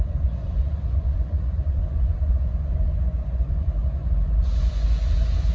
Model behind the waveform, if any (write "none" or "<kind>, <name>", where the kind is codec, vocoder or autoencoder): vocoder, Vocos